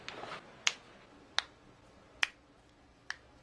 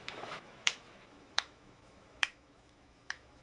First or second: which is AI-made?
second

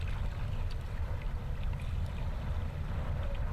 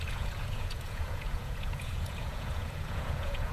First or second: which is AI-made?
second